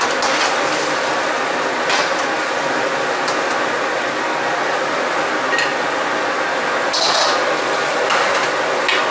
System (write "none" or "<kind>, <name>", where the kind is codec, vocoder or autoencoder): none